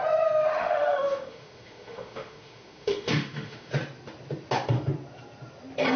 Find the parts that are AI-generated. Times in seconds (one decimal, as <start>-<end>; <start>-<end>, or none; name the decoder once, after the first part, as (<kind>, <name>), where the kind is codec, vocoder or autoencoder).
0.5-3.7 (autoencoder, DAC-VAE)